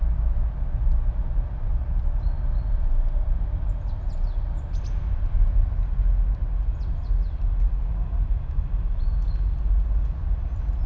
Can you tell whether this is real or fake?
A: real